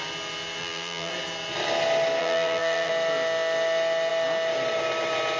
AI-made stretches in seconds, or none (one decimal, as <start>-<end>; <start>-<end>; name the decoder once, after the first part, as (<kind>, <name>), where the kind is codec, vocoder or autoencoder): 0.6-1.1 (vocoder, BigVGAN v2); 2.2-2.9